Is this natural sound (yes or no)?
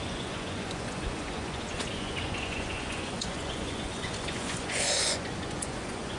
no